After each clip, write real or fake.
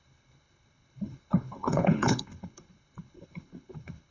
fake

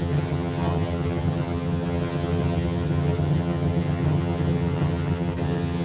fake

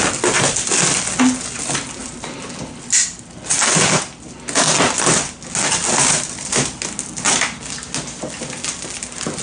real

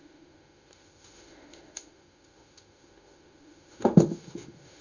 fake